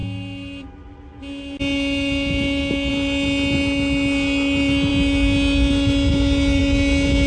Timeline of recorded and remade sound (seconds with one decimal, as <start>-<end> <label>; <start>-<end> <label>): 0.0-7.3 recorded